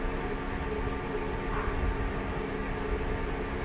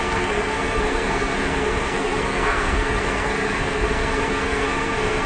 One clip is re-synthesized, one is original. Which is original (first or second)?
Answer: first